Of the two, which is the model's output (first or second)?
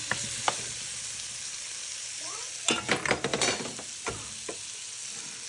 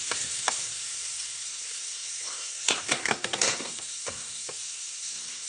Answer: second